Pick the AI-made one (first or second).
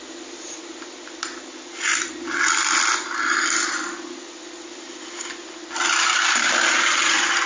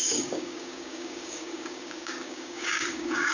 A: second